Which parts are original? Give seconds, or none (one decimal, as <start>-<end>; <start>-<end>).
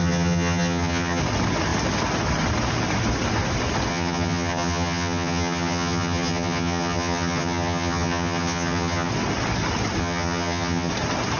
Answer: 1.2-3.9; 9.1-10.0; 10.9-11.4